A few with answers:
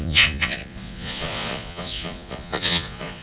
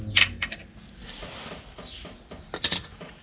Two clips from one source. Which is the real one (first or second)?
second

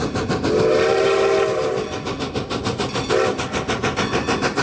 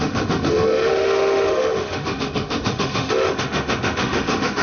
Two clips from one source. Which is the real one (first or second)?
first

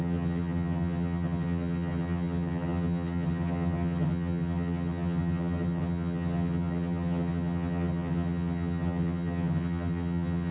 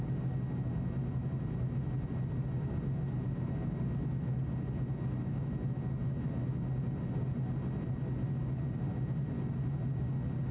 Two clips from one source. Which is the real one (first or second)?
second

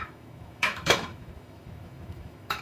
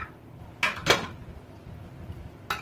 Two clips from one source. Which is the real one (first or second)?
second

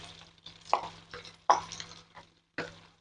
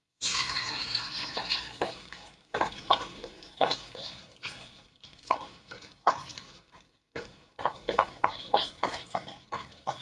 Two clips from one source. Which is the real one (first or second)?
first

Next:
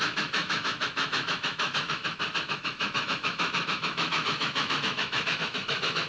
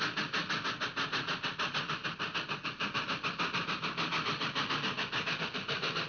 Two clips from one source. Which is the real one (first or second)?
second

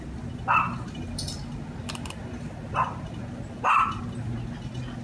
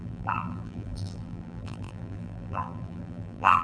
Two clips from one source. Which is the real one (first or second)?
first